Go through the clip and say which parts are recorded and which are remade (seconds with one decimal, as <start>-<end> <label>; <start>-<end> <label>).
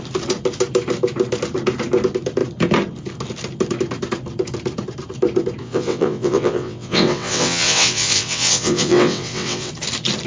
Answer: 0.0-5.6 recorded; 5.6-9.7 remade; 9.7-10.3 recorded